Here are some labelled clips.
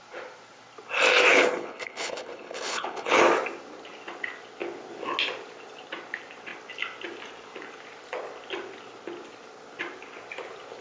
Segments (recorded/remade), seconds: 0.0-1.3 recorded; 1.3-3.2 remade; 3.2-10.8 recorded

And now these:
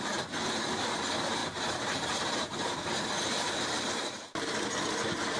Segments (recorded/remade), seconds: 0.0-1.4 recorded; 1.4-4.6 remade; 4.6-5.4 recorded

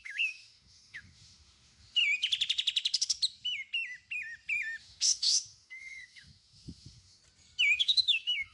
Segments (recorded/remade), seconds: 0.0-2.0 remade; 2.0-4.8 recorded; 4.8-7.2 remade; 7.2-7.8 recorded; 7.8-8.5 remade

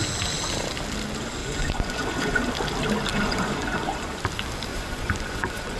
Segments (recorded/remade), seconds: 0.0-1.4 recorded; 1.4-2.5 remade; 2.5-3.1 recorded; 3.1-4.2 remade; 4.2-4.7 recorded; 4.7-5.8 remade

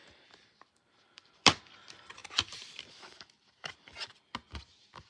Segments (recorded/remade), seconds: 0.0-1.6 remade; 1.6-2.2 recorded; 2.2-4.3 remade; 4.3-5.1 recorded

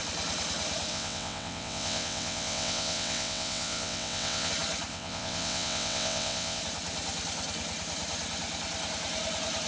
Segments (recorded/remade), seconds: 0.0-0.9 recorded; 0.9-4.5 remade; 4.5-4.9 recorded; 4.9-6.6 remade; 6.6-9.7 recorded

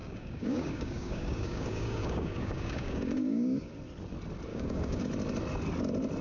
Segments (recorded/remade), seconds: 0.0-3.7 remade; 3.7-4.5 recorded; 4.5-5.0 remade; 5.0-6.2 recorded